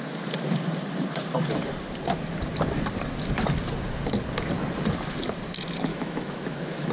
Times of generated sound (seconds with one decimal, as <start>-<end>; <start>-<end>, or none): 5.9-6.9